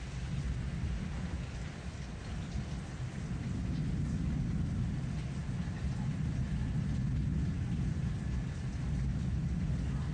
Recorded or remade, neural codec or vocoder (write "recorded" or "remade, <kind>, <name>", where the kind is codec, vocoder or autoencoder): recorded